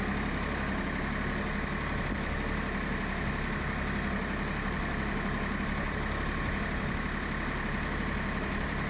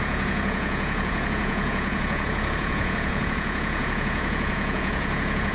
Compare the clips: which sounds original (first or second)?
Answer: first